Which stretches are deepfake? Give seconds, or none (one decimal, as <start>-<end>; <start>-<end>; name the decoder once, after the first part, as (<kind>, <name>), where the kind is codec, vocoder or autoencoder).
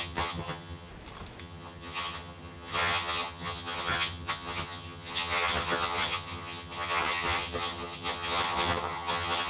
0.0-0.9 (vocoder, HiFi-GAN); 1.4-9.5